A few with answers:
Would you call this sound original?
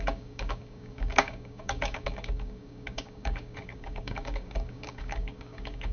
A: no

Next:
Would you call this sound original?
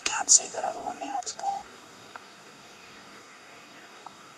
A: no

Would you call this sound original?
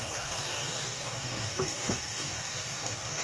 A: no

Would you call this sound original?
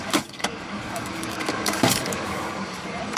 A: no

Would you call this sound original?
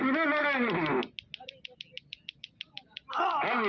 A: yes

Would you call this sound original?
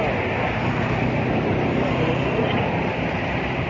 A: yes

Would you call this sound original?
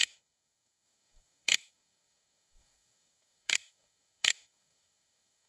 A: no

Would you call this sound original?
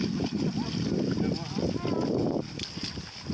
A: yes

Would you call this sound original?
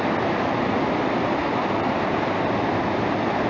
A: yes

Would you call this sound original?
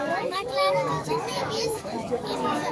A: no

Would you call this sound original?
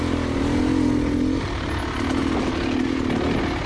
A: yes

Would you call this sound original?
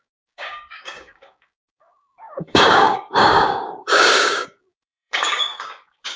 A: no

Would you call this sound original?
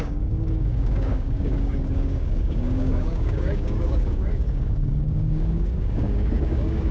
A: no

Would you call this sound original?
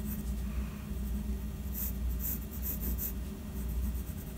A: yes